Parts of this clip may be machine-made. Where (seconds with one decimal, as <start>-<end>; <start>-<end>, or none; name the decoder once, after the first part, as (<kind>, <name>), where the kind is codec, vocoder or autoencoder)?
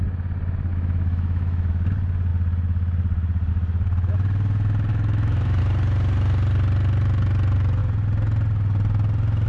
0.7-1.7 (autoencoder, DAC-VAE); 4.9-5.6